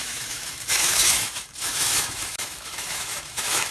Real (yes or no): no